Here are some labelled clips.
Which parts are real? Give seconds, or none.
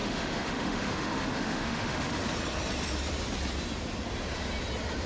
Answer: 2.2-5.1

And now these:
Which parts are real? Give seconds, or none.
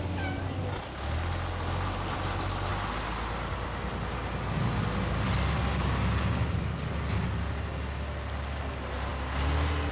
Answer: 0.0-9.9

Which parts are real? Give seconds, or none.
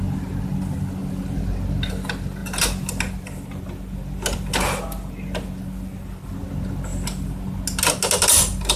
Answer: 0.0-8.8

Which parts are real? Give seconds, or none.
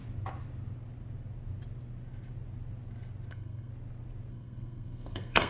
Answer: 0.0-3.3; 3.7-4.3